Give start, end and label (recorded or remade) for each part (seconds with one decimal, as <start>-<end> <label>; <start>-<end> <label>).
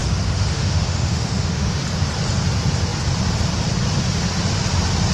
0.0-1.8 remade; 1.8-5.1 recorded